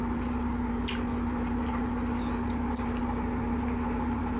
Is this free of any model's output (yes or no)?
yes